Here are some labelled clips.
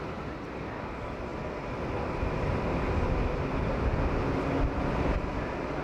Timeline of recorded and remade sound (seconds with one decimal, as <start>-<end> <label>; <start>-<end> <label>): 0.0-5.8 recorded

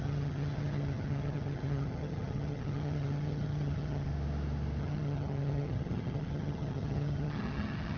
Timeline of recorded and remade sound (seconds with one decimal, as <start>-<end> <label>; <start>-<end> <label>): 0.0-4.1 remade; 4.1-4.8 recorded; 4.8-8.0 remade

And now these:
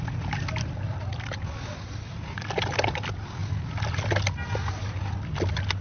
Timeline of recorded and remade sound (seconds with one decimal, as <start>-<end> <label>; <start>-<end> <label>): 0.0-5.8 recorded

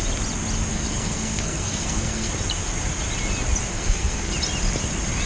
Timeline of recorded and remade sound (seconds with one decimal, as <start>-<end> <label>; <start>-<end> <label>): 0.0-0.7 recorded; 0.7-2.3 remade; 2.3-3.7 recorded; 3.7-4.3 remade; 4.3-5.3 recorded

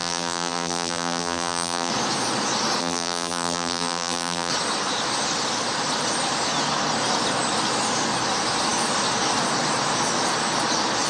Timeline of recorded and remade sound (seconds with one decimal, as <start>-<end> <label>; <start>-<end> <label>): 0.0-1.9 remade; 1.9-2.8 recorded; 2.8-4.5 remade; 4.5-11.1 recorded